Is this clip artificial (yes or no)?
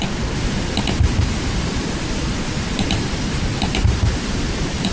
no